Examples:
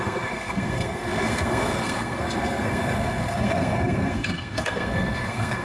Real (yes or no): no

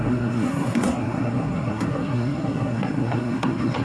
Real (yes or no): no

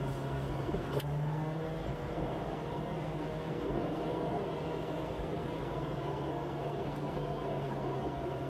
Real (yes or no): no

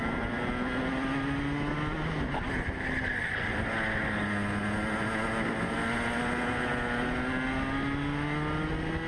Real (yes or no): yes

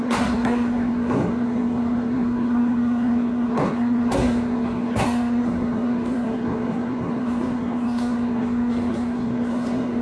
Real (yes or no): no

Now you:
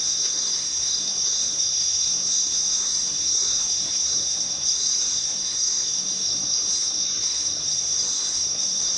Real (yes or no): no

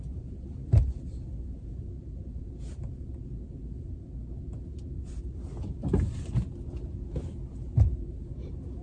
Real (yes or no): yes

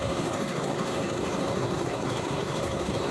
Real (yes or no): no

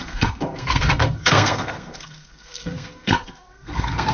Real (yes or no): no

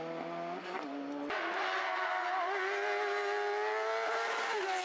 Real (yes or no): yes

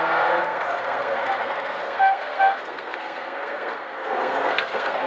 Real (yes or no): no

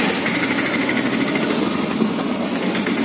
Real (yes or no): yes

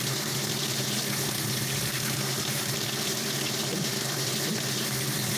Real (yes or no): yes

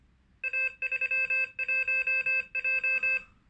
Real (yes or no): yes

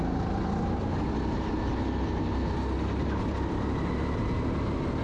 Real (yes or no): yes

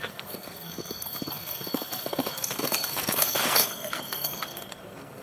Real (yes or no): no